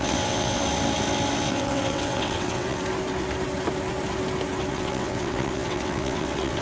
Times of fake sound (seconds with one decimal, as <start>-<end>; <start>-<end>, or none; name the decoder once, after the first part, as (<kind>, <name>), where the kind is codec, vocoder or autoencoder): 0.0-0.6 (vocoder, WaveNeXt); 1.4-2.8; 4.7-6.6